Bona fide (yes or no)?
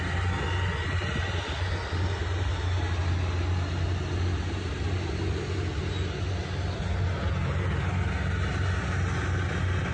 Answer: yes